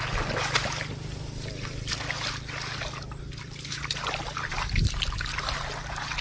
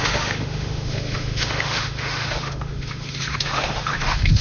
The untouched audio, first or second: first